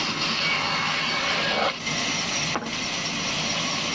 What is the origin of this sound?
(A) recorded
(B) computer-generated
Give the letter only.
A